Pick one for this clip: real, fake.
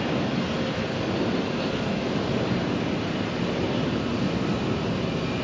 real